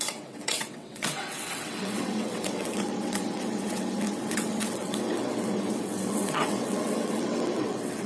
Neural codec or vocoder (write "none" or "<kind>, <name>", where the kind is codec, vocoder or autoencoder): vocoder, WaveNeXt